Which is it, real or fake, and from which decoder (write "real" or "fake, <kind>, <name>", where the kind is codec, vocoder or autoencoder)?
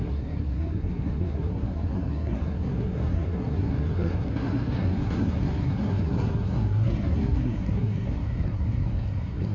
fake, codec, SNAC